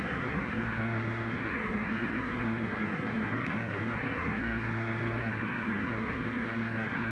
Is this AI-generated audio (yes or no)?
yes